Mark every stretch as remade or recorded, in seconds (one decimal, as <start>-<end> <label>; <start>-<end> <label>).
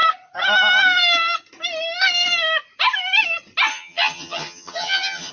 0.0-3.7 recorded; 3.7-5.3 remade